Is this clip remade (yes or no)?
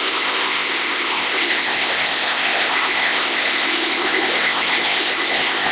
yes